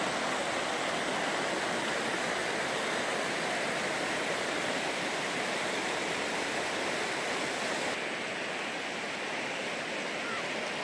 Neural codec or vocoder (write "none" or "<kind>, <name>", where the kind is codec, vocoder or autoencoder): none